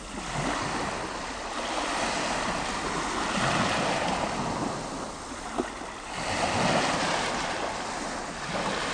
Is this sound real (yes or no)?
yes